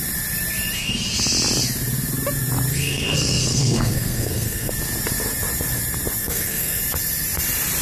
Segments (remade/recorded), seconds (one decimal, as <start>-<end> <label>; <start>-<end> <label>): 0.0-2.7 recorded; 2.7-4.7 remade; 4.7-6.2 recorded; 6.2-6.8 remade; 6.8-7.8 recorded